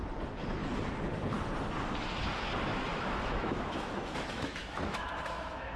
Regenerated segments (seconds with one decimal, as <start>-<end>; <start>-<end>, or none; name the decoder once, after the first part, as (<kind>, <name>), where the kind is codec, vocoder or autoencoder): 2.7-5.8 (autoencoder, DAC-VAE)